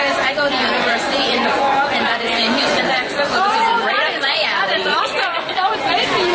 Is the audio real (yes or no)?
no